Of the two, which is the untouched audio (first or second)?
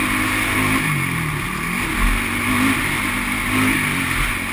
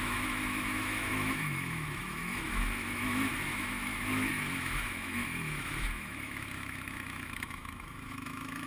first